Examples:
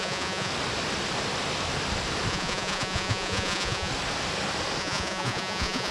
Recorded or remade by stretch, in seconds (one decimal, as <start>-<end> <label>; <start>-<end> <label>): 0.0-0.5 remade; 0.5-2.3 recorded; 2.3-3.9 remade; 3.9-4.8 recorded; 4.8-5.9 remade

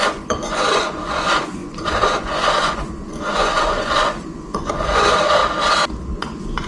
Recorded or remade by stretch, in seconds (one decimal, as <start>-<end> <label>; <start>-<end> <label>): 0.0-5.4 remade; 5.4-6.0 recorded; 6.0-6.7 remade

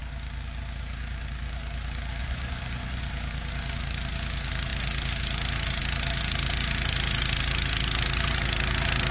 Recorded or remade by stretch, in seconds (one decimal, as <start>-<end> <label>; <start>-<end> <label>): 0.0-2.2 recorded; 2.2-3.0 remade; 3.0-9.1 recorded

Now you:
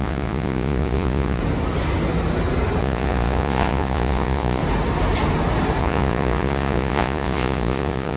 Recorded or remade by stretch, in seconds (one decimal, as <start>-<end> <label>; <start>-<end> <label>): 0.0-1.4 remade; 1.4-2.8 recorded; 2.8-4.6 remade; 4.6-5.8 recorded; 5.8-8.2 remade

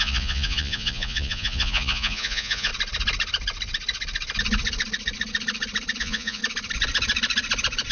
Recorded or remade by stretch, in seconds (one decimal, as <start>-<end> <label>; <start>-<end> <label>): 0.0-2.7 remade; 2.7-6.0 recorded; 6.0-6.4 remade; 6.4-7.9 recorded

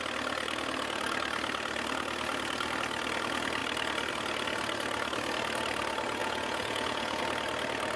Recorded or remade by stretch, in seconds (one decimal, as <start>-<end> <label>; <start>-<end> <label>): 0.0-6.2 recorded; 6.2-7.2 remade; 7.2-8.0 recorded

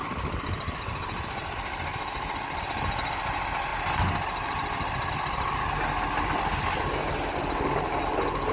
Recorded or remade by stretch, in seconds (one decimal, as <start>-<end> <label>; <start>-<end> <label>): 0.0-8.5 recorded

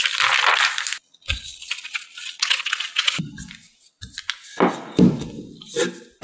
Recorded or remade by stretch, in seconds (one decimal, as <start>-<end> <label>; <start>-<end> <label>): 0.0-1.0 recorded; 1.0-3.2 remade; 3.2-6.2 recorded